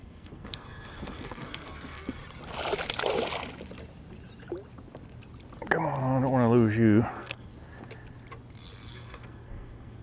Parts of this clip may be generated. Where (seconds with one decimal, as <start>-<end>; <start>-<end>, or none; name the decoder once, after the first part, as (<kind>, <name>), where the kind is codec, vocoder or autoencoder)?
0.0-2.2 (codec, SNAC); 7.1-7.5; 8.9-10.0